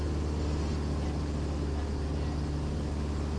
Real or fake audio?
real